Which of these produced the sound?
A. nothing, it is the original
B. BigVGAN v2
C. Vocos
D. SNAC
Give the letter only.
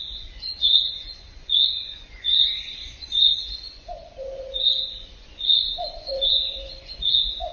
C